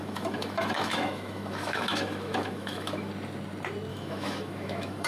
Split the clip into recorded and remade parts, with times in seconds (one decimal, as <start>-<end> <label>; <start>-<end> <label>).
0.0-3.1 remade; 3.1-3.9 recorded; 3.9-5.1 remade